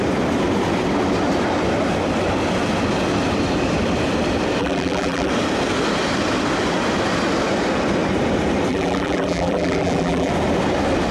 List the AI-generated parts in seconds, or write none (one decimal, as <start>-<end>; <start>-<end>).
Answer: 4.6-5.3; 8.7-10.3